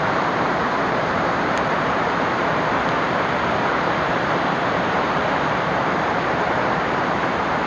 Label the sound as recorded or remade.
remade